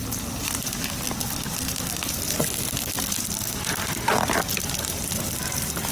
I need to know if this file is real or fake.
real